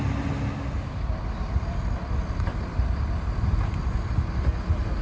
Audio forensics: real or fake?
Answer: real